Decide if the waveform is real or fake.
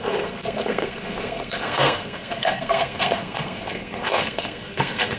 fake